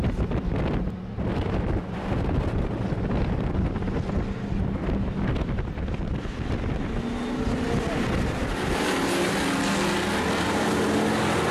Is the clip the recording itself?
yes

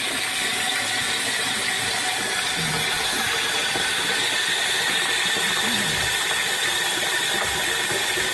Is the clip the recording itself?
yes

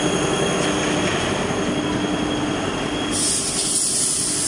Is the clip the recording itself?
yes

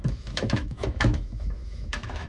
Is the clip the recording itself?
no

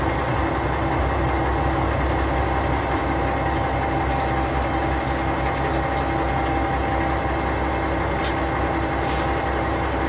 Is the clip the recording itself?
yes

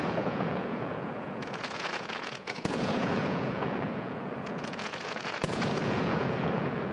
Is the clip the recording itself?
no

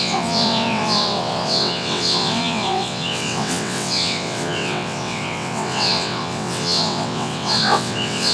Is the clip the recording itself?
no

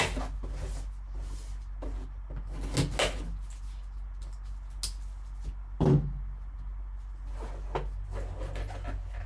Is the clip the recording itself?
yes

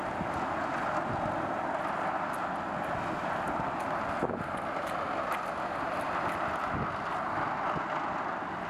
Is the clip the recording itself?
yes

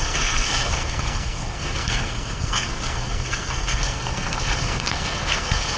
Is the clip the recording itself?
no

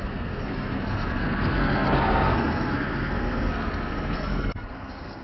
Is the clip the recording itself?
no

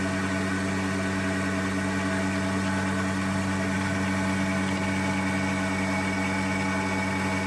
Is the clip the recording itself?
yes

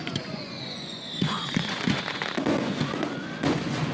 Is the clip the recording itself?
no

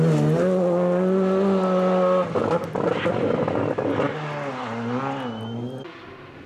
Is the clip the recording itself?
yes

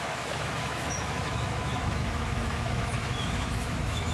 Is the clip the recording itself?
no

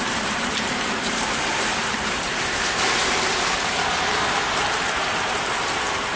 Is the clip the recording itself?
no